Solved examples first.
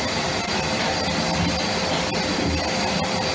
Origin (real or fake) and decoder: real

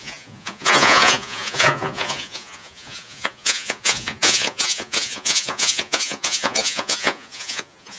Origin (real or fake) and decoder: fake, vocoder, Vocos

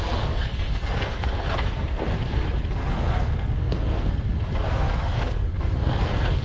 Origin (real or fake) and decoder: fake, codec, SNAC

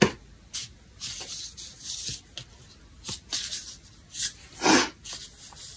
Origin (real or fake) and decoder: real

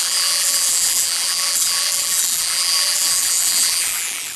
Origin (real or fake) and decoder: fake, vocoder, BigVGAN v2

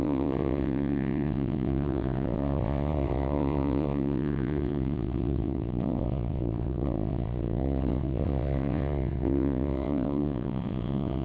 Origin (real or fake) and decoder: fake, vocoder, WaveNeXt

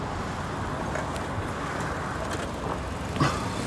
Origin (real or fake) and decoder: real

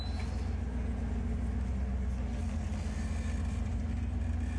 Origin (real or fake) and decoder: real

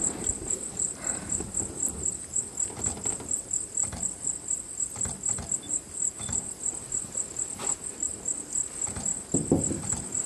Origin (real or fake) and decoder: real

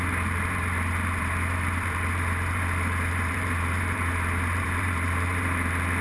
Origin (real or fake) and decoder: fake, vocoder, BigVGAN v2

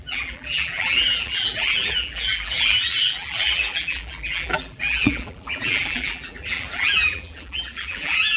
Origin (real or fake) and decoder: fake, vocoder, BigVGAN v2